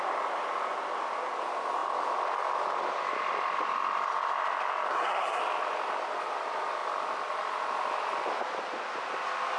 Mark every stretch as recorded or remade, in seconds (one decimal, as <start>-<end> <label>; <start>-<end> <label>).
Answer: 0.0-4.9 recorded; 4.9-5.4 remade; 5.4-9.6 recorded